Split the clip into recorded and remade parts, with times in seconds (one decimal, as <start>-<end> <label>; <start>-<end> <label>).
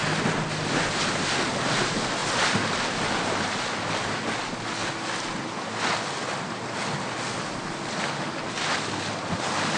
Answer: 0.0-9.8 recorded